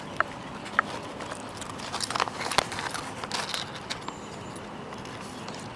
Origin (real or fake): real